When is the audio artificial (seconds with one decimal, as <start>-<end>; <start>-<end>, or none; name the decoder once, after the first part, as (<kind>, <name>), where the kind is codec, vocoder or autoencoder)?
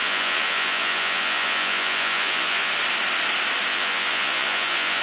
0.0-2.7 (vocoder, Vocos); 3.7-5.0